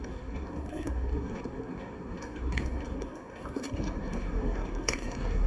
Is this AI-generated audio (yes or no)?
yes